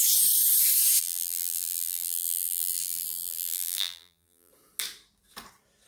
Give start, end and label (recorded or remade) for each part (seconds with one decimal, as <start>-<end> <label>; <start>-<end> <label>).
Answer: 0.0-1.0 recorded; 1.0-4.5 remade; 4.5-5.9 recorded